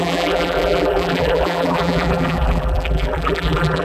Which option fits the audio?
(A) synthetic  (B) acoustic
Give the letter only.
A